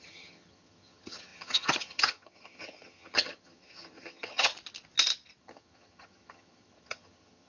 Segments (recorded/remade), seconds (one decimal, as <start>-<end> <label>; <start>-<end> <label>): 0.0-4.5 remade; 4.5-5.4 recorded; 5.4-7.5 remade